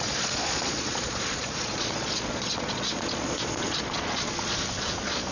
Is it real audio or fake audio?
fake